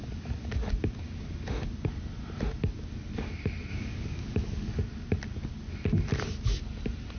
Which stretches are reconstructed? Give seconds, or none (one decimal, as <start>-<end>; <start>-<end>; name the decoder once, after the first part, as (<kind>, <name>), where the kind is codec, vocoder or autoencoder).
0.0-0.5 (codec, DAC); 3.7-4.8

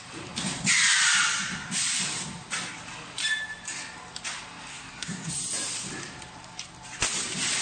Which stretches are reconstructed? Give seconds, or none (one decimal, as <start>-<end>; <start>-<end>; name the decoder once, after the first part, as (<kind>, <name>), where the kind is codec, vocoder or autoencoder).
4.7-5.3 (codec, SNAC)

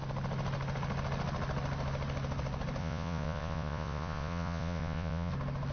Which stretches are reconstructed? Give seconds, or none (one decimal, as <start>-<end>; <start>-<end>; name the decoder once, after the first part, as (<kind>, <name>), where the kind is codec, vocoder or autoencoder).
2.8-5.3 (vocoder, Vocos)

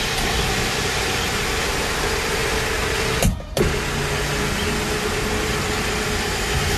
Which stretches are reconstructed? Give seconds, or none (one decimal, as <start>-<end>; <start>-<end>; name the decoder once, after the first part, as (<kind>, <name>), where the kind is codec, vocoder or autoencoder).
0.0-2.4 (vocoder, BigVGAN v2)

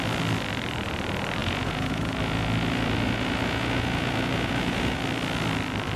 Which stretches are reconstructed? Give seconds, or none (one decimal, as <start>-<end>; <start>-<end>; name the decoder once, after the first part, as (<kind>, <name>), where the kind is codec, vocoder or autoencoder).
1.4-5.0 (vocoder, Vocos)

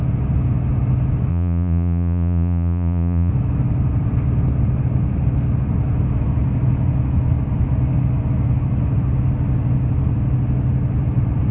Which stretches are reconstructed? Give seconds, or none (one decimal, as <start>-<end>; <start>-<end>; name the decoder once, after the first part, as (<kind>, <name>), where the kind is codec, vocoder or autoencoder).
1.3-3.3 (vocoder, Vocos)

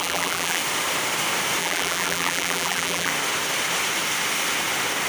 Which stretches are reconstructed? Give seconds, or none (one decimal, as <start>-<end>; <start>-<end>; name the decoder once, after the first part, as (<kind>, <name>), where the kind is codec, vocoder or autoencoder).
0.0-0.6 (vocoder, BigVGAN v2); 1.6-3.1

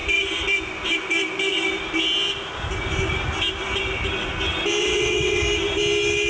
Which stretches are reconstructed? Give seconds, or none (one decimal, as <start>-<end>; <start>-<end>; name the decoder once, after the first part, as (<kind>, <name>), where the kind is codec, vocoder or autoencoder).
4.8-5.4 (vocoder, WaveNeXt)